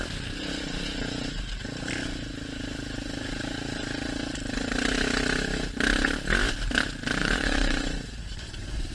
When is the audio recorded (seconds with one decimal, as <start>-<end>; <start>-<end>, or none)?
0.0-7.2